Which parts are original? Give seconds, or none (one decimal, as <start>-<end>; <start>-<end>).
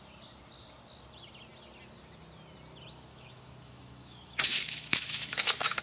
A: 0.0-3.1